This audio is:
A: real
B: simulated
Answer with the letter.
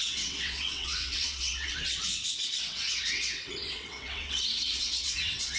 B